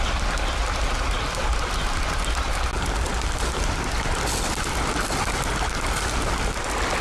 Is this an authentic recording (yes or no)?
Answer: yes